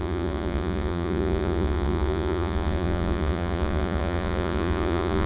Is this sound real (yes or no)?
no